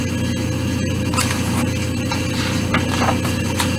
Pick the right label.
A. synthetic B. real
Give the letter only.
B